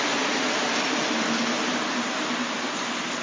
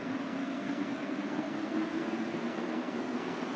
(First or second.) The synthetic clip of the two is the second